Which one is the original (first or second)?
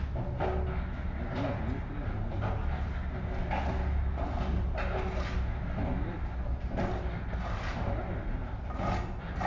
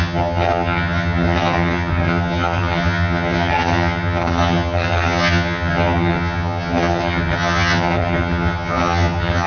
first